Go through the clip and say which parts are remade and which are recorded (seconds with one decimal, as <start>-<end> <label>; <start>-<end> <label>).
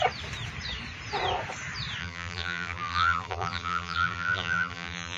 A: 0.0-2.0 recorded; 2.0-5.2 remade